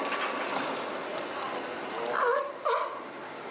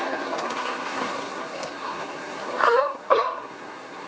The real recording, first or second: first